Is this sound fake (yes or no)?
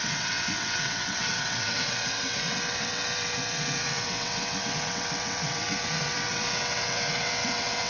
yes